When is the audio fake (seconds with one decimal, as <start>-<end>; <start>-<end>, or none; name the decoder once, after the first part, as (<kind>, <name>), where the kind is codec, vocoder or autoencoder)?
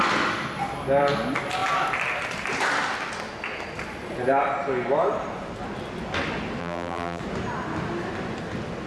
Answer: 6.6-7.2 (vocoder, BigVGAN v2)